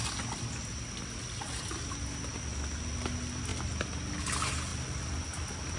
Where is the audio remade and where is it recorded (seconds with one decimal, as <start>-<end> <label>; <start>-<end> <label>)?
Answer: 0.0-5.8 recorded